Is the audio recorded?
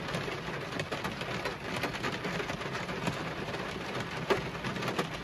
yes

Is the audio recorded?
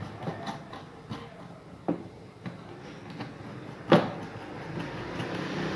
yes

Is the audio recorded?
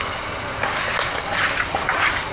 yes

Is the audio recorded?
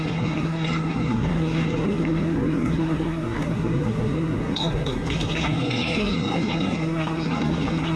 no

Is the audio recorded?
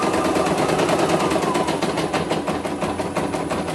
yes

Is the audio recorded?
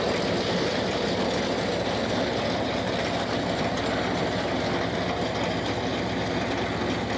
yes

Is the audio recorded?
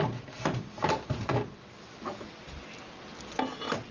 yes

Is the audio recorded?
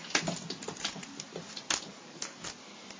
yes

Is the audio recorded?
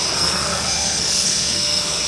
no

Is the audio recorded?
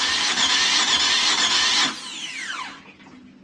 yes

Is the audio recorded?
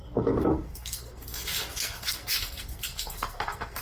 no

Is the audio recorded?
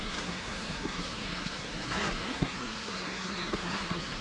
no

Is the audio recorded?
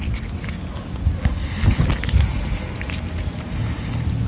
yes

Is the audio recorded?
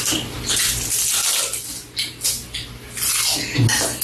yes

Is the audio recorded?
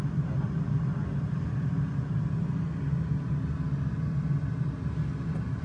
yes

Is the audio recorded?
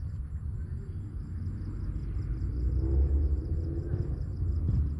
yes